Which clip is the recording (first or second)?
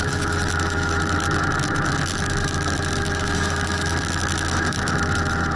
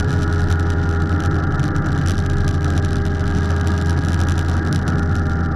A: second